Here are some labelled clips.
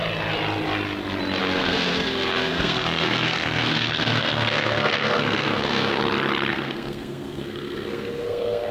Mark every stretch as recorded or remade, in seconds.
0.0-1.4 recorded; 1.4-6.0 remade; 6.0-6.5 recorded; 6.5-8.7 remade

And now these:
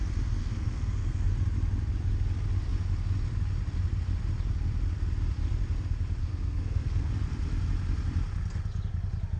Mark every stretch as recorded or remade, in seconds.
0.0-0.4 recorded; 0.4-1.3 remade; 1.3-6.2 recorded; 6.2-7.1 remade; 7.1-9.4 recorded

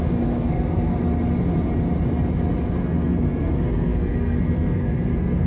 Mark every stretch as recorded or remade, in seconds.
0.0-0.9 remade; 0.9-2.8 recorded; 2.8-5.5 remade

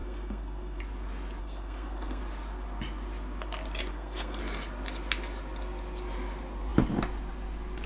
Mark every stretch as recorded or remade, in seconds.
0.0-0.8 remade; 0.8-1.4 recorded; 1.4-2.2 remade; 2.2-3.9 recorded; 3.9-4.4 remade; 4.4-7.9 recorded

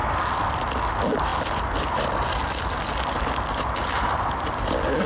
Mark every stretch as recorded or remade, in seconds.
0.0-5.1 recorded